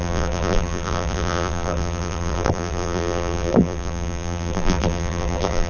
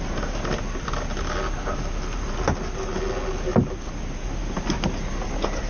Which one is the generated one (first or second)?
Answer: first